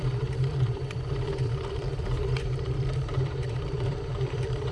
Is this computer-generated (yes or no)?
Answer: yes